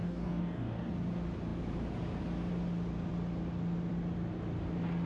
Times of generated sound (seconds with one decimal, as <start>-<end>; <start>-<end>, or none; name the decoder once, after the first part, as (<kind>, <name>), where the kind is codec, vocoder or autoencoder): 0.0-0.9 (codec, DAC)